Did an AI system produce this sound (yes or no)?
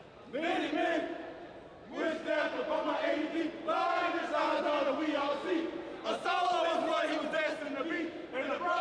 no